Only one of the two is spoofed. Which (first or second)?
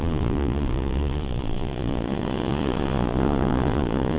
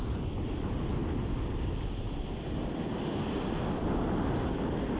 first